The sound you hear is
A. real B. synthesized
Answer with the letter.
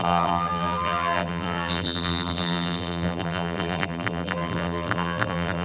B